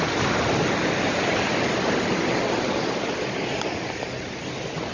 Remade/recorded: recorded